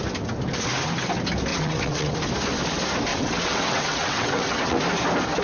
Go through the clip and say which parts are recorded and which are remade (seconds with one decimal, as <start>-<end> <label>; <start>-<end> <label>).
0.0-1.5 recorded; 1.5-2.1 remade; 2.1-3.1 recorded; 3.1-4.8 remade; 4.8-5.4 recorded